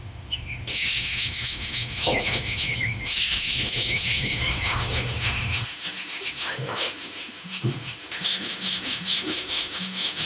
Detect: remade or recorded remade